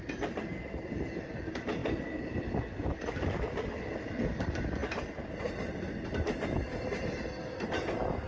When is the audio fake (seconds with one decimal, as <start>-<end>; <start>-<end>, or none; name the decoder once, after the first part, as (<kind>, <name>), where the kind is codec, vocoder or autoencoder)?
none